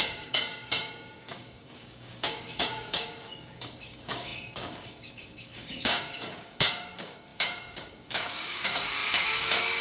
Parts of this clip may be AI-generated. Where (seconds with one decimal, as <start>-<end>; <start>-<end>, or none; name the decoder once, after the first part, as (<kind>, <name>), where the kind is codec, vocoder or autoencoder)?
0.0-9.8 (codec, DAC)